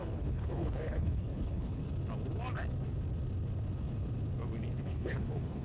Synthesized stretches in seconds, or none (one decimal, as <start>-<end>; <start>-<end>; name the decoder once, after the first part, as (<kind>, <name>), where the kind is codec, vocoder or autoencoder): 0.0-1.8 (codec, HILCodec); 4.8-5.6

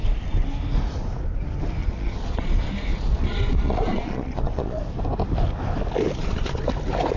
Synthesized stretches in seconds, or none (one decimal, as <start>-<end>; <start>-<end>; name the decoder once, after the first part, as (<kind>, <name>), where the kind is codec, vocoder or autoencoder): 1.8-2.5 (vocoder, Vocos); 2.9-4.8; 6.2-6.7

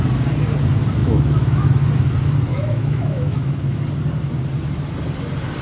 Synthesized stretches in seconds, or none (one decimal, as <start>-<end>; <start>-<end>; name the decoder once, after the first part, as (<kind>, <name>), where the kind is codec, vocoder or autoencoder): 1.0-1.8 (autoencoder, DAC-VAE); 2.5-3.8

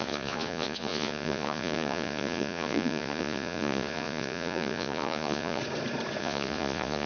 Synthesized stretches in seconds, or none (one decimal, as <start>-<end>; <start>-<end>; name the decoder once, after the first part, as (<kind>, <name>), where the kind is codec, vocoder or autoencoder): 0.0-5.6 (vocoder, Vocos); 6.2-7.1